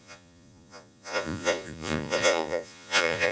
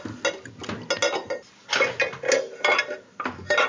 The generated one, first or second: first